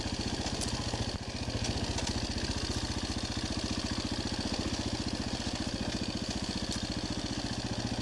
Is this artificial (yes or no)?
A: no